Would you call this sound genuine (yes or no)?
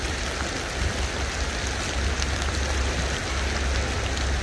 yes